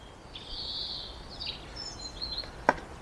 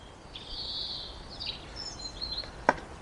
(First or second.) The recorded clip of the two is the first